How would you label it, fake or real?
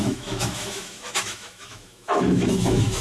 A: fake